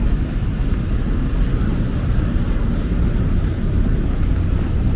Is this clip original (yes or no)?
yes